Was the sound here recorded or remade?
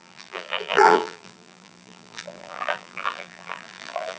remade